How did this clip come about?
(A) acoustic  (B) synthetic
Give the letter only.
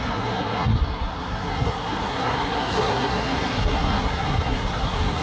B